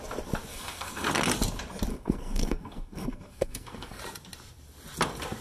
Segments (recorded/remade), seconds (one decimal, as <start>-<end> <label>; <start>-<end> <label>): 0.0-0.5 recorded; 0.5-1.1 remade; 1.1-1.9 recorded; 1.9-4.0 remade; 4.0-5.4 recorded